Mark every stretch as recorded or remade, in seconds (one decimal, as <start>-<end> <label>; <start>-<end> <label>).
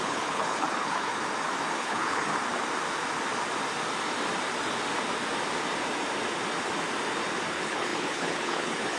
0.0-1.1 remade; 1.1-1.8 recorded; 1.8-2.3 remade; 2.3-7.5 recorded; 7.5-9.0 remade